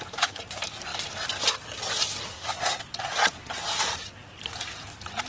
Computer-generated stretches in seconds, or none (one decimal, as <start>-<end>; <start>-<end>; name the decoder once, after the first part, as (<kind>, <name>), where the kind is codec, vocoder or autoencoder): 2.3-2.8 (codec, SNAC)